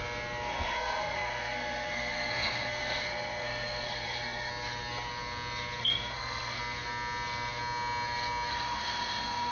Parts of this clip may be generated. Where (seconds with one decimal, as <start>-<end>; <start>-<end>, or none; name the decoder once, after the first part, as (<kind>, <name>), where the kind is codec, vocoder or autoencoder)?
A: 0.5-4.5 (codec, SNAC); 5.8-6.6; 8.5-9.5